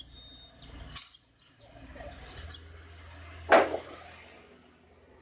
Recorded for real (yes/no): yes